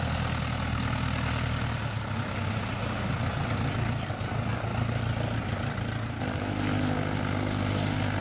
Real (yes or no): yes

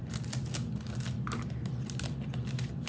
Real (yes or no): yes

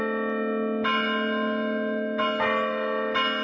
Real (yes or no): yes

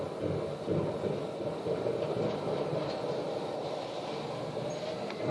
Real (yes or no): yes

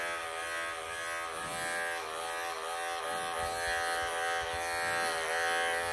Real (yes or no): yes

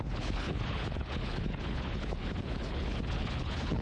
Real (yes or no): no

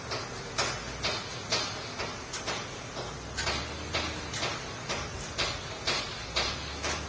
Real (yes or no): yes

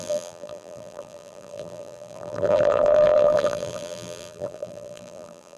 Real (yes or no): no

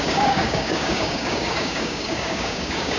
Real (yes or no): no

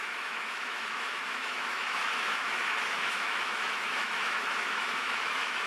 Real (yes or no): no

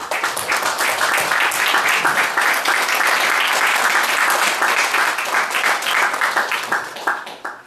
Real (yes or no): yes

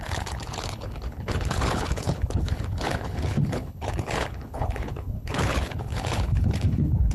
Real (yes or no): no